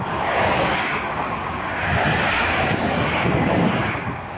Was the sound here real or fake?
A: fake